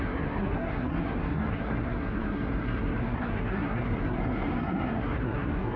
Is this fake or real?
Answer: fake